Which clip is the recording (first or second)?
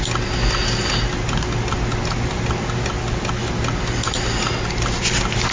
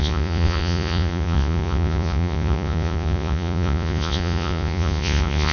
first